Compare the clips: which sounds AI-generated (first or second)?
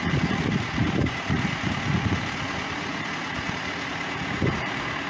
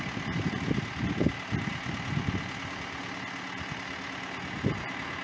first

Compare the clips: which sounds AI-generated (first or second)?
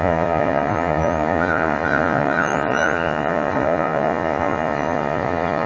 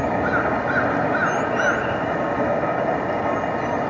first